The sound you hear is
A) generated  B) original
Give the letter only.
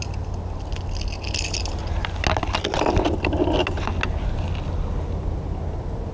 B